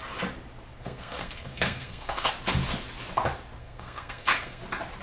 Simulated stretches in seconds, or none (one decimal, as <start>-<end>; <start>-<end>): 0.7-2.3; 3.6-4.6